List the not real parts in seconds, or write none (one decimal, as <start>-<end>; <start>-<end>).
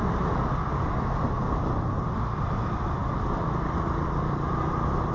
none